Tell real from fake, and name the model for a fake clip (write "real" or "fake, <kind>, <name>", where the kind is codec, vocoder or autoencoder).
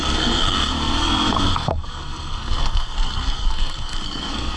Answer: fake, codec, SNAC